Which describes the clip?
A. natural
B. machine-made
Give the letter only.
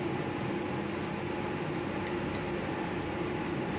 A